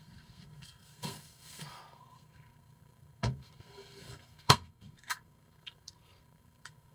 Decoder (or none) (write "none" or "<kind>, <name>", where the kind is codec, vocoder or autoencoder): codec, SNAC